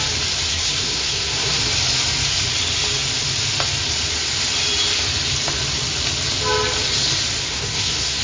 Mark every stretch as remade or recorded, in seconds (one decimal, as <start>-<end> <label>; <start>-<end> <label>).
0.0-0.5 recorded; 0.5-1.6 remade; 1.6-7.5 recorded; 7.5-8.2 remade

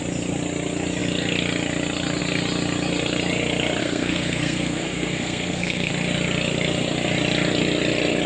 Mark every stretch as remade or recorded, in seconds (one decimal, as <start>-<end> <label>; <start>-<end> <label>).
0.0-3.8 recorded; 3.8-5.9 remade; 5.9-8.3 recorded

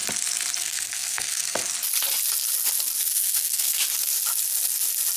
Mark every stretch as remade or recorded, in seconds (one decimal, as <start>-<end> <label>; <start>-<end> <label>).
0.0-0.6 recorded; 0.6-1.6 remade; 1.6-3.0 recorded; 3.0-3.8 remade; 3.8-5.2 recorded

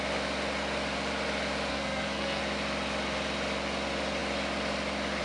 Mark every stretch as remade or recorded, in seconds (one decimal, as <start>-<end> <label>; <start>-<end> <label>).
0.0-1.7 recorded; 1.7-2.4 remade; 2.4-5.2 recorded